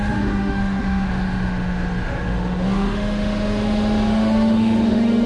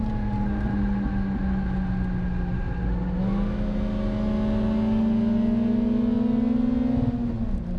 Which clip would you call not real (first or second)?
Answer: first